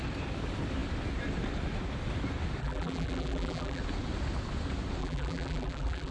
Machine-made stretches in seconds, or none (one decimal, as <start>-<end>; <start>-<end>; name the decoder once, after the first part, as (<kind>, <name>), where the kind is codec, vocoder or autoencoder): 2.6-3.8 (vocoder, BigVGAN v2); 5.0-6.1